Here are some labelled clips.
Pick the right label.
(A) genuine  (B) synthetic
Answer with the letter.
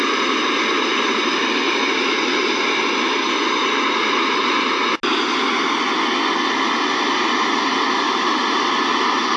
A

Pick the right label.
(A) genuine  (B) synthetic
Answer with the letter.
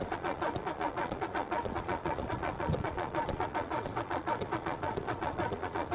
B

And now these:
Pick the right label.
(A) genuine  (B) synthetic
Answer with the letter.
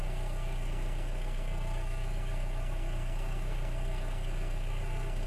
B